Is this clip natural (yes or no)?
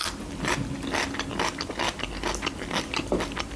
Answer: yes